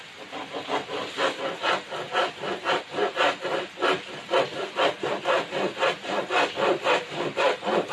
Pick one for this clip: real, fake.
real